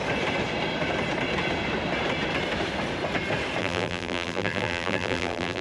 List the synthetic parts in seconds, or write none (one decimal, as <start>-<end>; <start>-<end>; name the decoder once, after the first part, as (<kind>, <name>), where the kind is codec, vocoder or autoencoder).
3.6-5.6 (vocoder, BigVGAN v2)